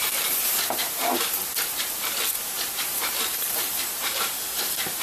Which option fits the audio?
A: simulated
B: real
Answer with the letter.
A